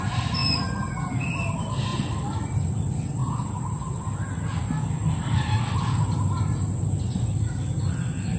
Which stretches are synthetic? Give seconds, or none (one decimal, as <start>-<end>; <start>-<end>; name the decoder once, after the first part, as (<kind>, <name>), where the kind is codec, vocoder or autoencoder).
0.4-1.2 (vocoder, BigVGAN v2); 1.9-2.6